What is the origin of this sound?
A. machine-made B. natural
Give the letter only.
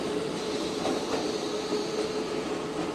B